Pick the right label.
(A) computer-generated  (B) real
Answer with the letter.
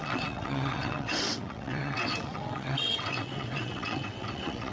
A